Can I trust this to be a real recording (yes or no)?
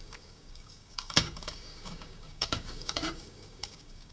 no